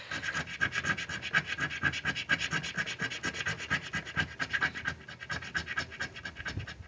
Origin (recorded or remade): recorded